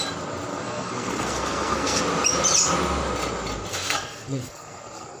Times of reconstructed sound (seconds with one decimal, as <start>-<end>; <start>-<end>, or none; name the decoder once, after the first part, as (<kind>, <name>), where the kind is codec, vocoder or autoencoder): 0.5-2.0 (codec, SNAC); 3.7-5.2